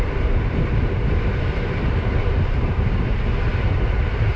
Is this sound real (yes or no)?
no